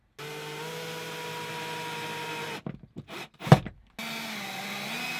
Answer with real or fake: real